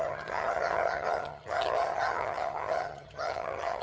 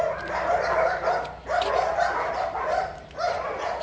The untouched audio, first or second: second